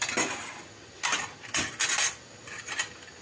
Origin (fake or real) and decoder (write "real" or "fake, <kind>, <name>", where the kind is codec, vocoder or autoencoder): real